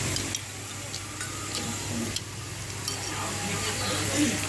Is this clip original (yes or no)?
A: yes